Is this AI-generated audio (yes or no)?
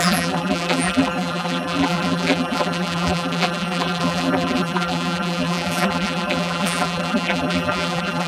yes